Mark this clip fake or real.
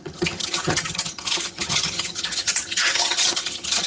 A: fake